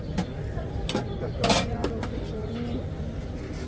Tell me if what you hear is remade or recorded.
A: recorded